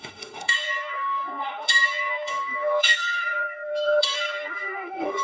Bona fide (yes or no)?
no